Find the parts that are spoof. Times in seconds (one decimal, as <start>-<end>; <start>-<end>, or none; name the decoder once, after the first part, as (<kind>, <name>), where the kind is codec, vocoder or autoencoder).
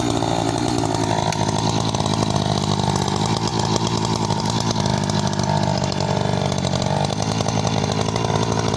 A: none